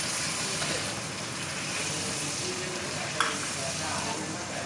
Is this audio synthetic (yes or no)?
no